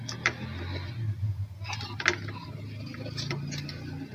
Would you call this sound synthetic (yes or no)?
no